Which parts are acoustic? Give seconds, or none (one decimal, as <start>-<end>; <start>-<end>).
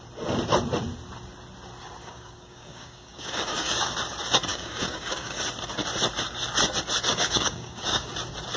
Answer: 0.0-2.0; 3.9-4.5; 5.4-7.1; 8.1-8.6